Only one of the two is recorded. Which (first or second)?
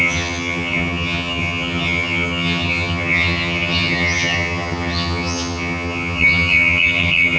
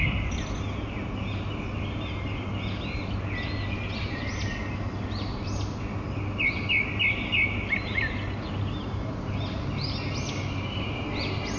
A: second